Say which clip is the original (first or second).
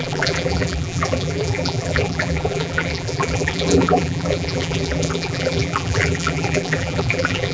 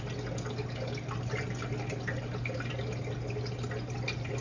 second